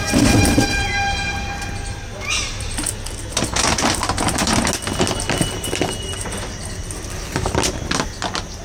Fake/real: real